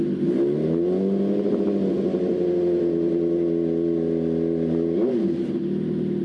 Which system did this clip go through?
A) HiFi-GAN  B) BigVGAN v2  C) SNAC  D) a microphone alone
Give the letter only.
D